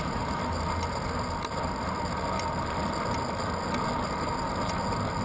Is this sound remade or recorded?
recorded